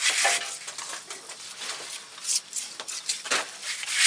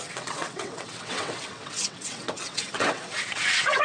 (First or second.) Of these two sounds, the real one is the first